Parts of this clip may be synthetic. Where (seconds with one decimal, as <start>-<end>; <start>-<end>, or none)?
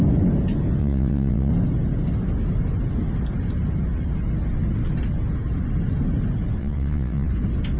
0.8-1.5; 6.6-7.3